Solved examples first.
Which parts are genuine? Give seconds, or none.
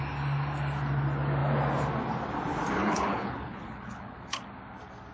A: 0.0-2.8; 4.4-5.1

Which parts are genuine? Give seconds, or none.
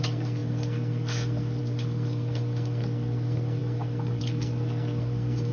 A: none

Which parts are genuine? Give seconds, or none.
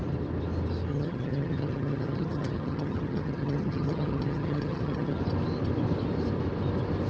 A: 0.0-0.9; 5.2-7.1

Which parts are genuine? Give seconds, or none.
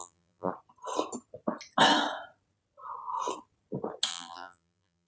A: 0.5-4.1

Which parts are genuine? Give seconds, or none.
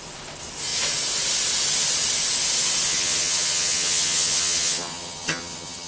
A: 0.0-2.9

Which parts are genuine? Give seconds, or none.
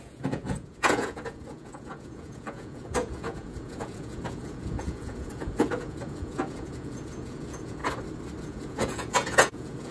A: 7.8-8.4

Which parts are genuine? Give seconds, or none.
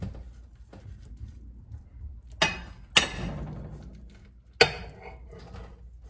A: 0.0-6.1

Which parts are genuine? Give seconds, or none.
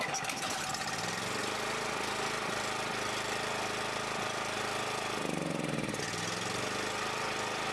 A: 0.0-7.7